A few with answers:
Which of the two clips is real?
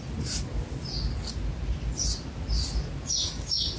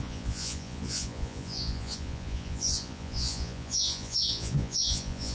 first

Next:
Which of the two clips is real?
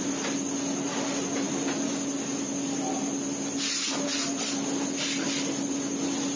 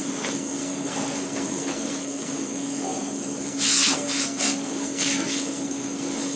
first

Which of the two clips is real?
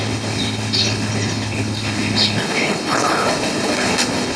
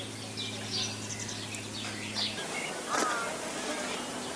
second